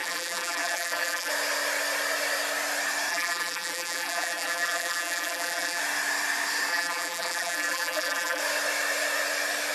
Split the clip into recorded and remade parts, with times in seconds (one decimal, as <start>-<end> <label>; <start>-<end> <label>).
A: 0.0-1.3 remade; 1.3-3.1 recorded; 3.1-5.8 remade; 5.8-6.7 recorded; 6.7-8.4 remade; 8.4-9.7 recorded